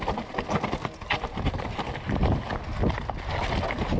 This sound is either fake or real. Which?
real